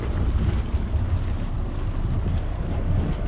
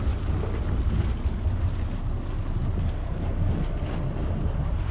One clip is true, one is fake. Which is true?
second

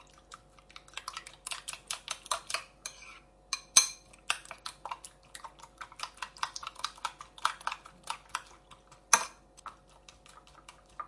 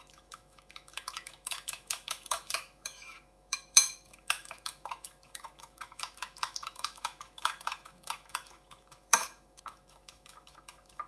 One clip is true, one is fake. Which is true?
first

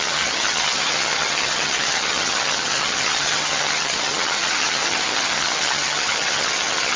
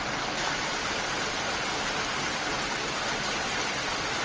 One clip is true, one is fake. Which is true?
second